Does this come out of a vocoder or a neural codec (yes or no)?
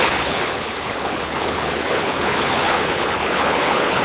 yes